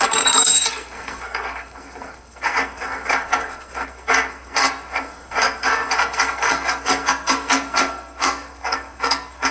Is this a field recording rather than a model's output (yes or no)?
no